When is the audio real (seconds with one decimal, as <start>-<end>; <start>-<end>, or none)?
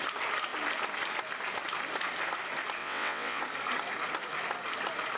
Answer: 0.0-2.8; 3.4-5.2